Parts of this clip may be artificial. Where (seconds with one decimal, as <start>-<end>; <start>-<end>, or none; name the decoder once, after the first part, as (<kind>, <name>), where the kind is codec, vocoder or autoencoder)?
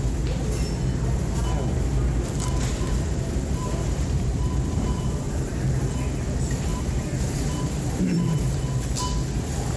2.7-5.5 (vocoder, BigVGAN v2); 6.7-8.6